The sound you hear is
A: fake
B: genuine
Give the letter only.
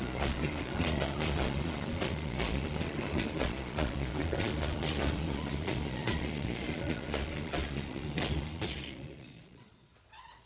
A